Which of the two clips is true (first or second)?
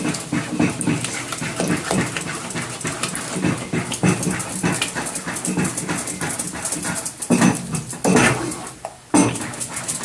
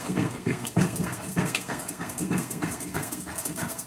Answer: first